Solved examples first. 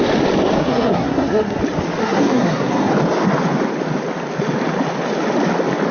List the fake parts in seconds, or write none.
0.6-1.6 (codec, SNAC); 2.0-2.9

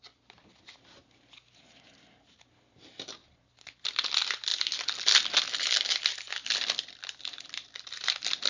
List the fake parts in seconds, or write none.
none

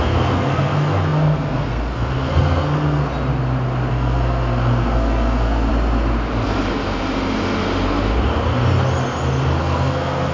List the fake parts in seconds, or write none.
0.0-3.0 (codec, SNAC); 3.9-5.7; 9.6-10.3

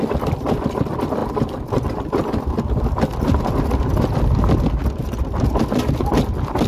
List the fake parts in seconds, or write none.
none

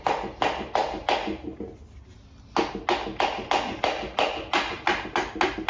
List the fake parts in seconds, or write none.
none

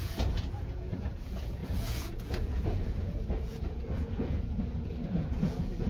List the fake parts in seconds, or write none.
0.0-5.9 (vocoder, Vocos)

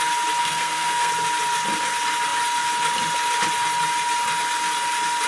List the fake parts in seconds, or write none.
0.4-1.1 (codec, SNAC)

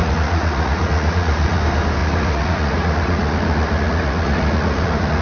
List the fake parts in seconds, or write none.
0.0-1.6 (vocoder, Vocos); 2.0-5.2